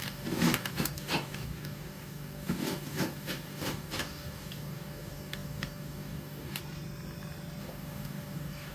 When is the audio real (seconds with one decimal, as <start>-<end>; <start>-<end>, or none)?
6.6-7.6